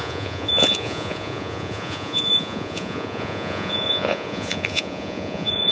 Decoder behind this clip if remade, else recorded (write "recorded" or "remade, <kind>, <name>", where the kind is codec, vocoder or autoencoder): remade, vocoder, Vocos